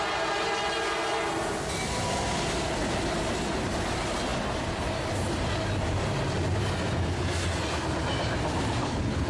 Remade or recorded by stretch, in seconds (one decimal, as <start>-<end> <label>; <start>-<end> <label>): 0.0-8.8 recorded; 8.8-9.3 remade